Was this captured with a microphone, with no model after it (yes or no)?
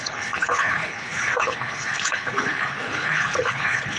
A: no